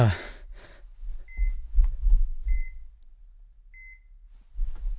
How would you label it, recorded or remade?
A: recorded